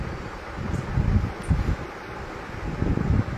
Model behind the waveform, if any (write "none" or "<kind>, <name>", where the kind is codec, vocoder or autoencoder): none